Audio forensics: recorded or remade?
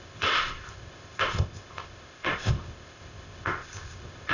remade